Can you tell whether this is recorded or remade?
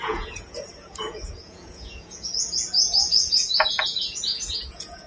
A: remade